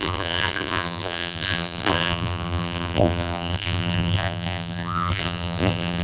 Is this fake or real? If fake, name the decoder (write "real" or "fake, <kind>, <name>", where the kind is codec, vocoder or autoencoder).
fake, vocoder, BigVGAN v2